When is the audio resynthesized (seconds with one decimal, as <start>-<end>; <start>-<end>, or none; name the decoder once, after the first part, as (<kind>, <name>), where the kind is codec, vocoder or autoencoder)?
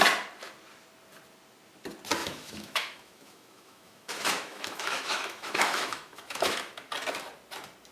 2.2-6.9 (autoencoder, DAC-VAE)